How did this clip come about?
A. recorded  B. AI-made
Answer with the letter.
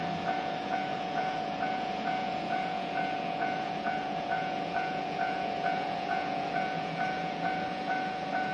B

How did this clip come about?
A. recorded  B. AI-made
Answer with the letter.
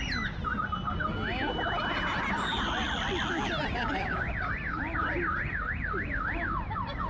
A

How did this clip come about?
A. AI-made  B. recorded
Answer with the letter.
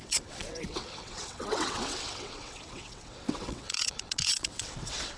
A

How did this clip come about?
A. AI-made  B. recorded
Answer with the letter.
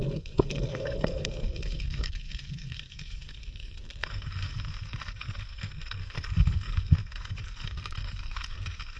A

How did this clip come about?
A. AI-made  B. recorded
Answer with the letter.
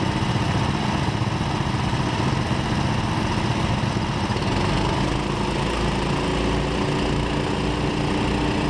B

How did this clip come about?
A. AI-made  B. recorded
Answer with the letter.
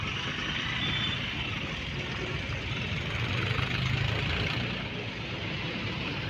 B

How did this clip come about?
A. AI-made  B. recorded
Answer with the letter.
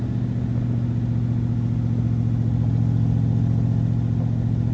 B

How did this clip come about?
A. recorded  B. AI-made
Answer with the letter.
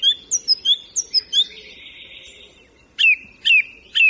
A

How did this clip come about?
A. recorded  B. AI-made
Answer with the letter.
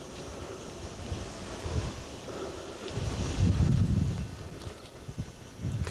A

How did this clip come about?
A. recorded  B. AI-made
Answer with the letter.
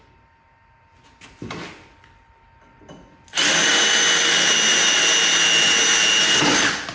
A